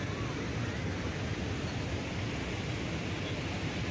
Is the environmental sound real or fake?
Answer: real